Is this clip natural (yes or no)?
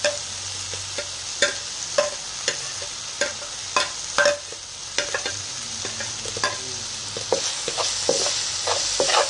yes